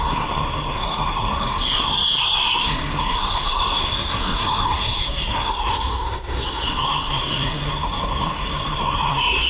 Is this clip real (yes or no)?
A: no